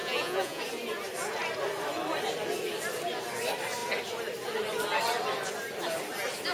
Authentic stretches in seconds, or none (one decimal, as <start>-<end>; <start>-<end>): 0.6-6.5